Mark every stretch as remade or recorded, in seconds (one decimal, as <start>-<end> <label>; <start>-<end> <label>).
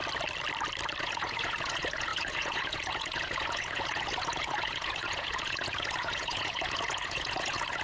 0.0-1.0 recorded; 1.0-7.8 remade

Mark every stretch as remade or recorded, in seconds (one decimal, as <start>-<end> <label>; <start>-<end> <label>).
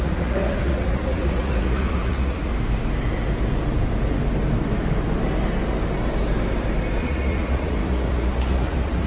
0.0-2.5 remade; 2.5-7.0 recorded; 7.0-9.1 remade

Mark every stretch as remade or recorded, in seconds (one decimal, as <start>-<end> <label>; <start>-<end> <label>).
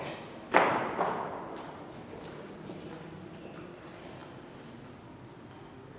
0.0-6.0 recorded